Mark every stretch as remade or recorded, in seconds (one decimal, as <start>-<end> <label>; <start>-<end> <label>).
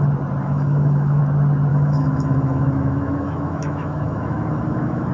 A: 0.0-0.4 recorded; 0.4-1.2 remade; 1.2-1.7 recorded; 1.7-5.1 remade